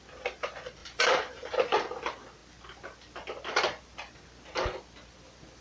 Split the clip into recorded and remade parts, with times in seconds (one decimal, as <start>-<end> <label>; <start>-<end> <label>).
0.0-0.8 recorded; 0.8-2.0 remade; 2.0-5.6 recorded